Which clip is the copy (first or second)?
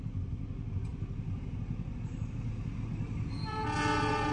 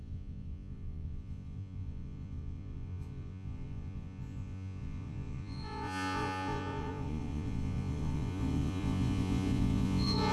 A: second